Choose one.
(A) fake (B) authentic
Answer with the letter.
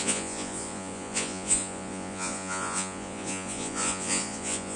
A